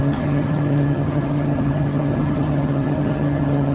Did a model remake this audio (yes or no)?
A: yes